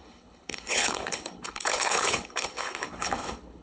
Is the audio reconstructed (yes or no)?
yes